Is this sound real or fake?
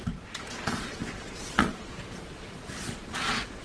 fake